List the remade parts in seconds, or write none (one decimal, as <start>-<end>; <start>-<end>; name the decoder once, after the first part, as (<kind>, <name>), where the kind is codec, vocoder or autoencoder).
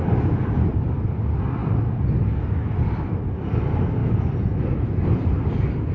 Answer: 4.0-5.3 (vocoder, BigVGAN v2)